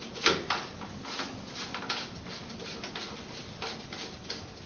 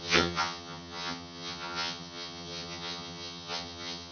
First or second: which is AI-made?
second